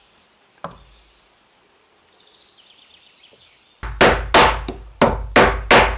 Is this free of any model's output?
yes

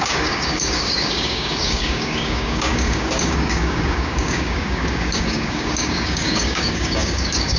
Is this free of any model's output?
no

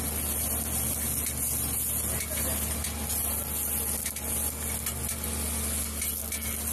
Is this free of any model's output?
yes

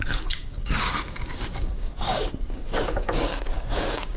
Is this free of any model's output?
no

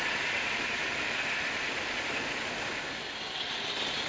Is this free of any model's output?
yes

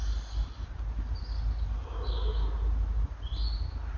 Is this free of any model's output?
yes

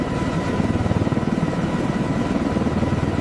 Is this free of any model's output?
yes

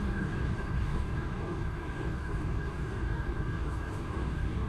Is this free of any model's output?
no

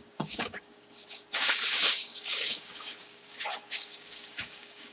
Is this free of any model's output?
no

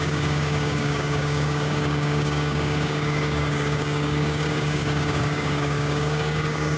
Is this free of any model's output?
no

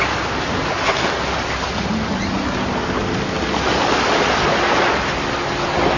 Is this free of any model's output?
yes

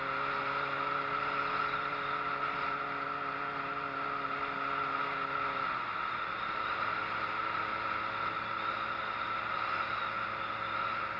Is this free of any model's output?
yes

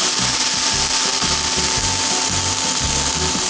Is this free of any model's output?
yes